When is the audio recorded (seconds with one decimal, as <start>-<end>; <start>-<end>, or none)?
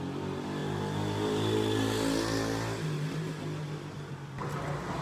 0.0-5.0